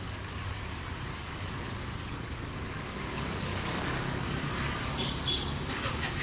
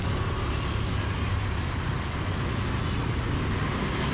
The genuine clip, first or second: second